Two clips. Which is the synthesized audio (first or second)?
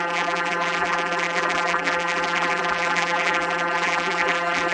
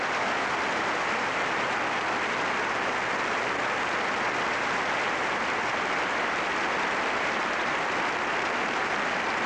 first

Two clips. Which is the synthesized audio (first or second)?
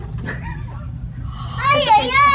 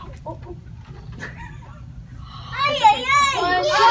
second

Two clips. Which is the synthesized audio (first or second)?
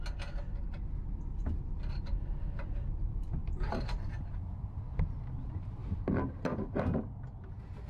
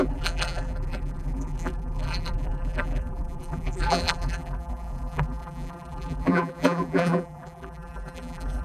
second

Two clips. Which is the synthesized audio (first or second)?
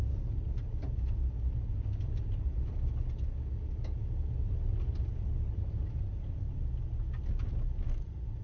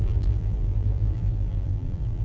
second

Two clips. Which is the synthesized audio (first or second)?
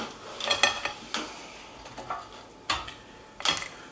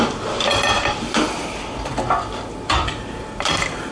second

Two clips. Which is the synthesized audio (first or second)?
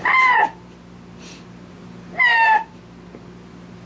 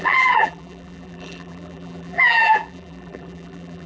second